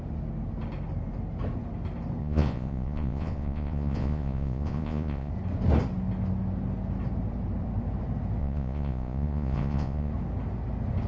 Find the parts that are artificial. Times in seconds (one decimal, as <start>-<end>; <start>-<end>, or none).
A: 2.2-5.3; 8.4-10.1